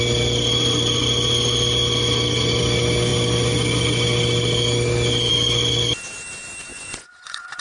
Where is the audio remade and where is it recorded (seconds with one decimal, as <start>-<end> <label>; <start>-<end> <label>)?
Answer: 0.0-6.7 recorded; 6.7-7.6 remade